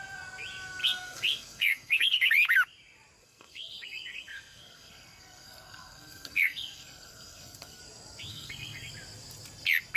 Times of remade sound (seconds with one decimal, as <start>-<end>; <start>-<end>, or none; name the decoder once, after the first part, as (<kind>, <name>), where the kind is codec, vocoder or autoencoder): 0.8-2.3 (codec, SNAC); 3.2-7.8; 8.3-8.9